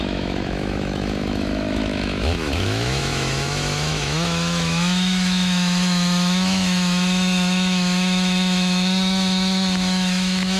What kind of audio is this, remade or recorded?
remade